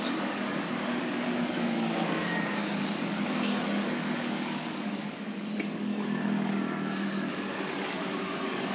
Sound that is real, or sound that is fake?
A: fake